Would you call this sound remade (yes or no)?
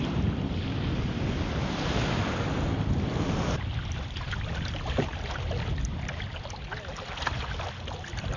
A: no